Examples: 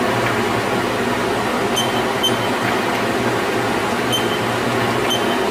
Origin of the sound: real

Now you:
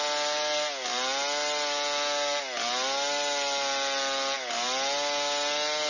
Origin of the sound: real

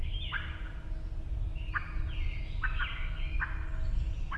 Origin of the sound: real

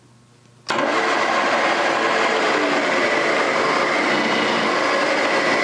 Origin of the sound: real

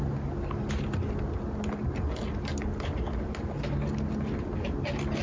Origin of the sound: real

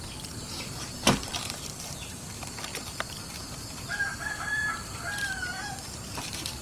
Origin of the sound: fake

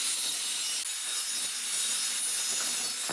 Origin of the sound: real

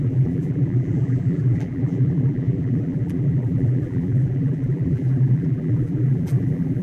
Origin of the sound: fake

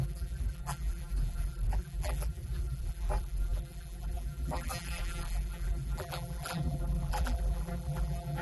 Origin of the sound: fake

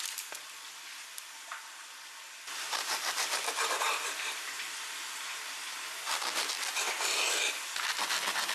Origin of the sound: fake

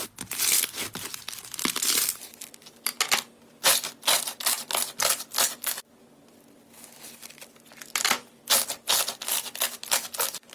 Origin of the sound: real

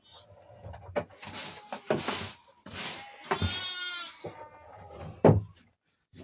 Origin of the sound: real